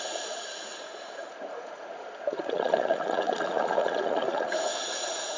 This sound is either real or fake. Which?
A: fake